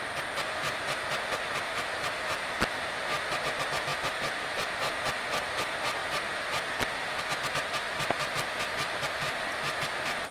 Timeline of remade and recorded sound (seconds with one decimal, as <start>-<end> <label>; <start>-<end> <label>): 0.0-10.3 recorded